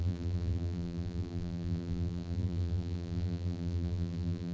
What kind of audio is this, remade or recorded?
remade